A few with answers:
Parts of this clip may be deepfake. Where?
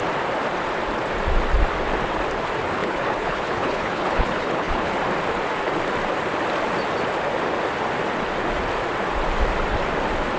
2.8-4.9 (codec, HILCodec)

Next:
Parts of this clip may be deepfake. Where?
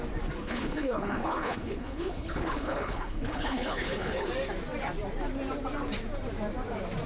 0.4-4.3 (codec, HILCodec)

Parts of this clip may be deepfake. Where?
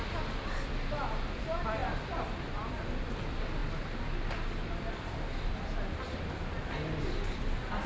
none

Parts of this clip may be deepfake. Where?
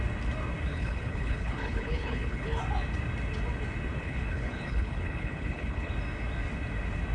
0.7-2.6 (codec, HILCodec); 3.9-5.9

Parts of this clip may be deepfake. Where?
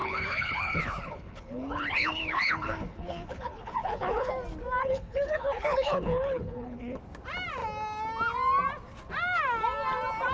0.0-4.3 (codec, HILCodec); 4.8-7.0